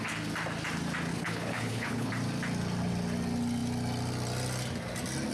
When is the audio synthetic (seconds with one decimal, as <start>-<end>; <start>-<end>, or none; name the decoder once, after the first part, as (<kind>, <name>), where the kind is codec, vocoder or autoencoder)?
1.1-2.1 (codec, HILCodec)